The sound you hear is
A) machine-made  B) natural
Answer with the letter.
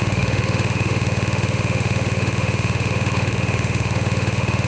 A